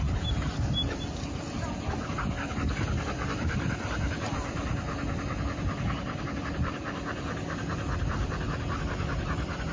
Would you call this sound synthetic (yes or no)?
no